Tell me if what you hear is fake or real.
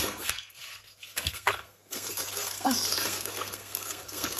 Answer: fake